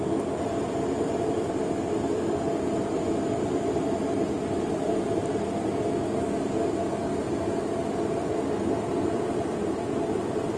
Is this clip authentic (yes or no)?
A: yes